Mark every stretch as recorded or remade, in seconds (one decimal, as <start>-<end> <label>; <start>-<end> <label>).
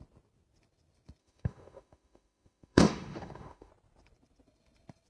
0.0-1.2 recorded; 1.2-3.7 remade; 3.7-5.1 recorded